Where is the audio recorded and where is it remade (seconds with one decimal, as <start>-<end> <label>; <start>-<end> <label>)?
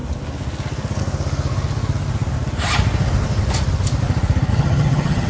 0.0-4.5 recorded; 4.5-5.3 remade